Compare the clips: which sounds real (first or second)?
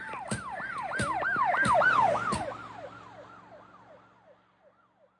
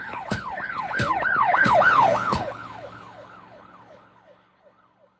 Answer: first